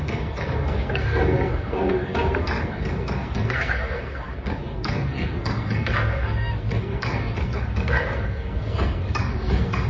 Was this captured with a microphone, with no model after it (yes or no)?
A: no